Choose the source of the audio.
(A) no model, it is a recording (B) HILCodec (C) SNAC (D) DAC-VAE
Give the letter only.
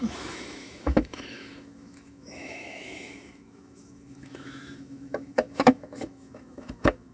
D